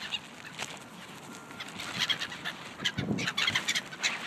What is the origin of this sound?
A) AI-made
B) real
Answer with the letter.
B